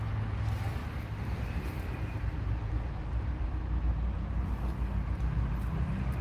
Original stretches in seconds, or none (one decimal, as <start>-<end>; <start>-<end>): 0.0-0.8; 4.5-6.2